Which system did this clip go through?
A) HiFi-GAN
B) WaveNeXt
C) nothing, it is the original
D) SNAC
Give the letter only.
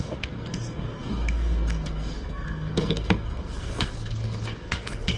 D